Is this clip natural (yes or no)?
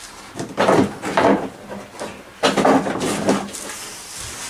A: yes